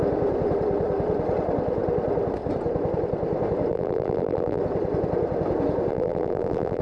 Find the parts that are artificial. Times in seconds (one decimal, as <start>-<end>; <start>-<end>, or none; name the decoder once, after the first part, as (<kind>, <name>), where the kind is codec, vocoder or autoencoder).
3.7-4.6 (vocoder, BigVGAN v2); 5.9-6.8